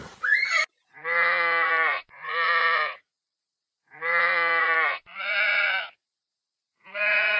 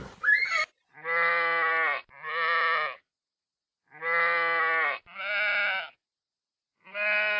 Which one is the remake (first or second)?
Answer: first